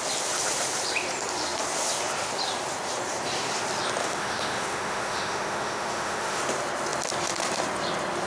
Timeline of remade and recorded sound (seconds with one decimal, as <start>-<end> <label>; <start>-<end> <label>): 0.0-4.0 recorded; 4.0-6.4 remade; 6.4-8.3 recorded